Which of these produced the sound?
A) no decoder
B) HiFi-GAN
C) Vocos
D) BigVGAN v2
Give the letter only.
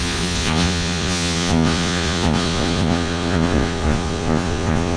C